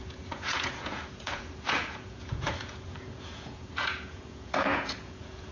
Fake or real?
fake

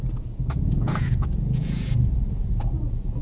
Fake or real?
fake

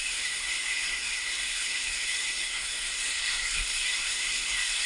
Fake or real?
fake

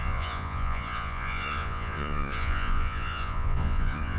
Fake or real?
fake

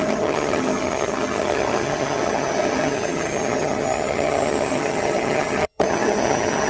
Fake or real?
fake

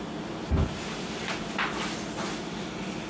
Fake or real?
real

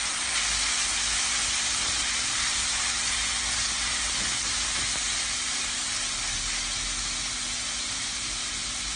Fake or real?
real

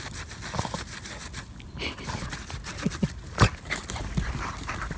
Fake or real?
real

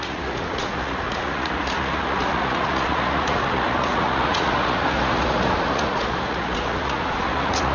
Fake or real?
fake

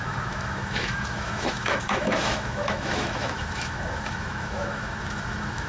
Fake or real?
fake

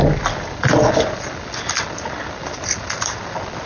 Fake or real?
fake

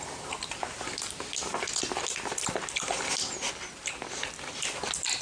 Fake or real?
real